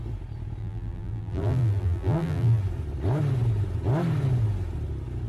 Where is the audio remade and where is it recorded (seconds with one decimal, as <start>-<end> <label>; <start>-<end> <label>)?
0.0-0.6 recorded; 0.6-2.6 remade; 2.6-5.3 recorded